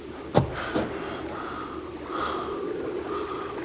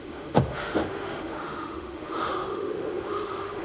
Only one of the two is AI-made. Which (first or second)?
second